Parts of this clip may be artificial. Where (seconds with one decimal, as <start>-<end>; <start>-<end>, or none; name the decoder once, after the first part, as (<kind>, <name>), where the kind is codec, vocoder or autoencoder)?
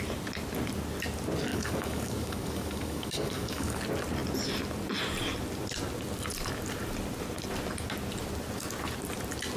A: 1.5-3.8 (codec, DAC)